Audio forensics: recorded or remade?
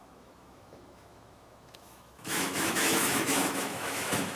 remade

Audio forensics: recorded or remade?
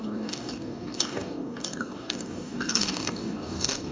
remade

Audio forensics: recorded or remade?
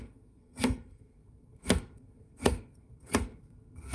remade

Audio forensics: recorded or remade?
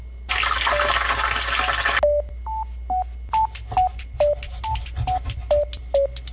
recorded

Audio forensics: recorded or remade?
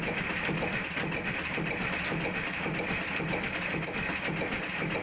recorded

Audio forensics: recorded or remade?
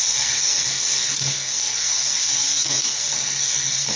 remade